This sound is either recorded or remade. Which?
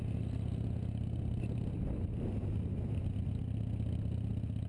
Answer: recorded